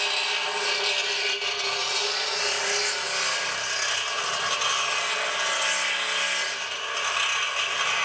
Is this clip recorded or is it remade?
recorded